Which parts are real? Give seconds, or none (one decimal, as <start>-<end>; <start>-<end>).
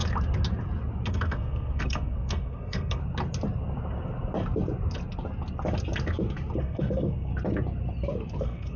0.0-1.1; 3.0-6.6; 7.3-8.4